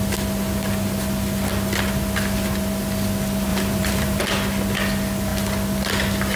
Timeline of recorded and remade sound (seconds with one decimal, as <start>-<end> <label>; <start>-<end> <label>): 0.0-3.5 recorded; 3.5-4.2 remade; 4.2-6.4 recorded